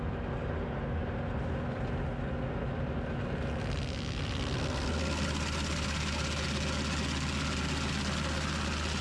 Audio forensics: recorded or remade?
recorded